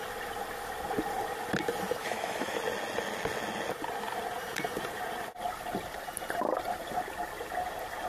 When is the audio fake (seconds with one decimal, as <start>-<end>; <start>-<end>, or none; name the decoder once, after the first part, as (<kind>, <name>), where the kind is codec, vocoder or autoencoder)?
2.0-2.6 (autoencoder, DAC-VAE)